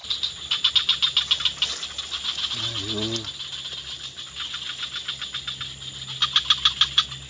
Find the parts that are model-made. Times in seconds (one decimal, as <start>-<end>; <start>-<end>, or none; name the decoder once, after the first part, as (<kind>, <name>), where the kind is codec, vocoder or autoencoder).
0.0-0.7 (vocoder, BigVGAN v2)